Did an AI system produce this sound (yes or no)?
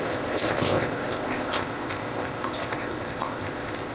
yes